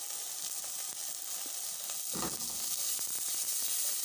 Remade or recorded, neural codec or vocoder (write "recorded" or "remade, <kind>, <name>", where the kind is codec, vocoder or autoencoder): recorded